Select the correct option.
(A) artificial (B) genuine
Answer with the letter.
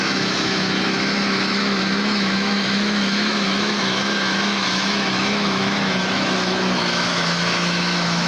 A